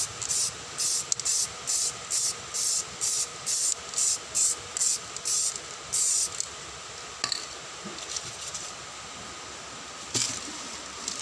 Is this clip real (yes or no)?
yes